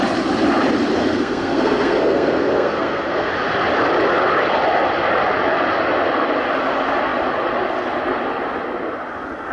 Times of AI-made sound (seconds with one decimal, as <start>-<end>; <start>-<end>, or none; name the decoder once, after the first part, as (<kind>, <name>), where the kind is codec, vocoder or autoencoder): 1.0-3.3 (codec, SNAC)